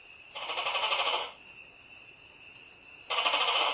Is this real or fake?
fake